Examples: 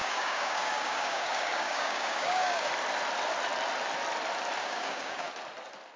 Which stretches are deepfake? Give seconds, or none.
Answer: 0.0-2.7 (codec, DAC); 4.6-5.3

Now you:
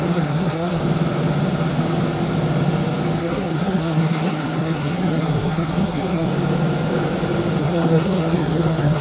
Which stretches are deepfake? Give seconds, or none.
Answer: 0.0-0.8 (codec, SNAC); 3.2-6.3; 7.6-9.0